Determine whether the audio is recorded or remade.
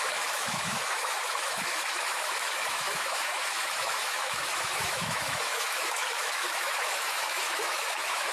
remade